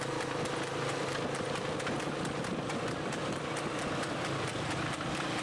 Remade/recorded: recorded